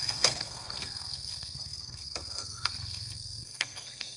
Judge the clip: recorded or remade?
remade